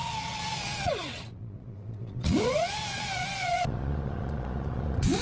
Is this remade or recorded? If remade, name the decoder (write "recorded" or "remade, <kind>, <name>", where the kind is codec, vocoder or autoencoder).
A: remade, vocoder, Vocos